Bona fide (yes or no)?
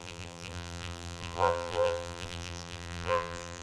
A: no